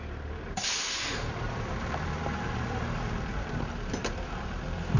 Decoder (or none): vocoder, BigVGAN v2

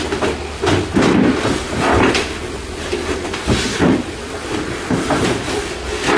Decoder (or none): none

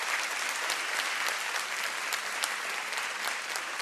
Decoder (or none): none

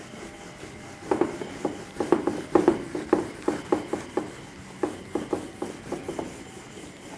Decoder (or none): none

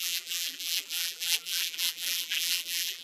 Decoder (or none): vocoder, BigVGAN v2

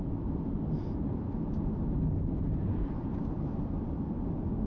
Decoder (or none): vocoder, BigVGAN v2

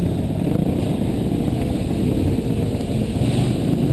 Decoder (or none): none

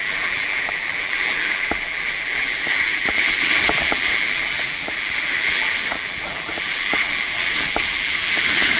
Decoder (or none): vocoder, BigVGAN v2